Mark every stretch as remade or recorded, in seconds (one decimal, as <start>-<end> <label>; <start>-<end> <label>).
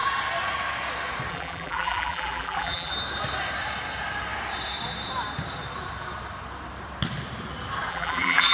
0.0-1.3 recorded; 1.3-2.9 remade; 2.9-7.9 recorded; 7.9-8.5 remade